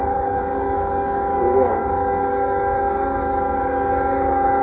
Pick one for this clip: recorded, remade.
remade